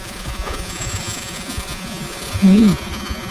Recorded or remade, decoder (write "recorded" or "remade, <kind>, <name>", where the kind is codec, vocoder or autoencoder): remade, vocoder, Vocos